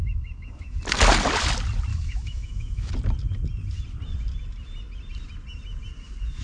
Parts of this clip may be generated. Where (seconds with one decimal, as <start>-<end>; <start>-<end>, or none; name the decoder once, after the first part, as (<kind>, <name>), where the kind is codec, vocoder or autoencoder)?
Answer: 0.0-0.8 (autoencoder, DAC-VAE); 1.9-2.9

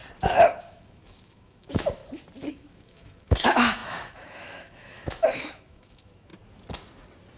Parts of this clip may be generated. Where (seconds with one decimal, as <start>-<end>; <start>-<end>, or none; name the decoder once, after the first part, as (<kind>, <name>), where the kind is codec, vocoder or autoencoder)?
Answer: 0.6-2.0 (autoencoder, DAC-VAE); 2.5-6.3

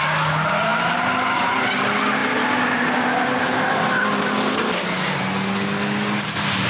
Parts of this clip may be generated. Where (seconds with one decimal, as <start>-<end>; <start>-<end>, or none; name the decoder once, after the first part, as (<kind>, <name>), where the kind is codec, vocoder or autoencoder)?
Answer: none

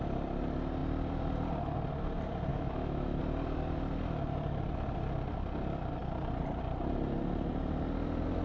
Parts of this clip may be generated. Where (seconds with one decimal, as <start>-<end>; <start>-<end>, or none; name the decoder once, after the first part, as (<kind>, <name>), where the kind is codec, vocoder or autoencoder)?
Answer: 2.5-3.2 (autoencoder, DAC-VAE)